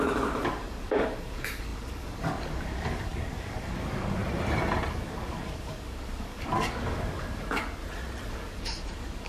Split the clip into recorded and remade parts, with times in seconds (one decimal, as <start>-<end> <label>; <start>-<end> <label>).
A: 0.0-4.2 remade; 4.2-4.9 recorded; 4.9-7.8 remade; 7.8-8.3 recorded; 8.3-9.3 remade